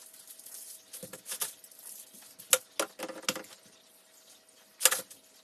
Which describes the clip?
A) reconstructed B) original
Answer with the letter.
B